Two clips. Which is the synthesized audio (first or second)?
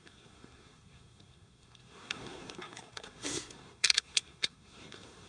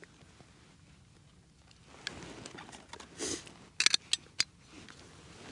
first